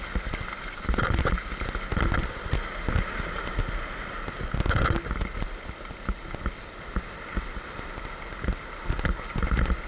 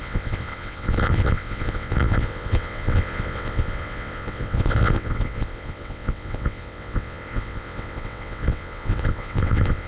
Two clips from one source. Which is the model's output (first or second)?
second